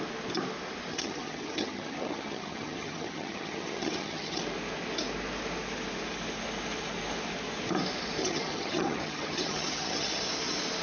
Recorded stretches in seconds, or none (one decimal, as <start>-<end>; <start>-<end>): 0.0-0.9; 4.4-8.2; 10.2-10.8